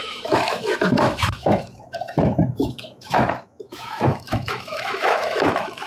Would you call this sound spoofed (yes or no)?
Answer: yes